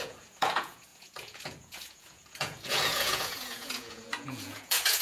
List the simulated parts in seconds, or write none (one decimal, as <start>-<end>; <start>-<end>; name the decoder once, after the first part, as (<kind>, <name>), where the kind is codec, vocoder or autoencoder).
0.0-5.0 (vocoder, Vocos)